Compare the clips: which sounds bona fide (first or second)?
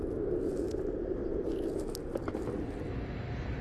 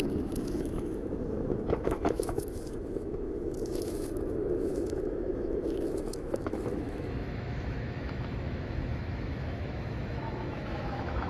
first